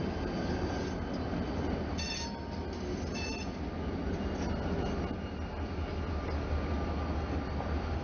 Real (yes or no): yes